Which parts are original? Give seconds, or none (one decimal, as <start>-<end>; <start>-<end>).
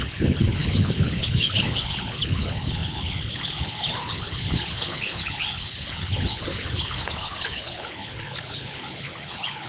none